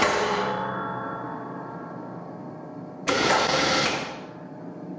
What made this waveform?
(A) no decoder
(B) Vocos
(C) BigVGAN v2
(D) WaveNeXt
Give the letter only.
C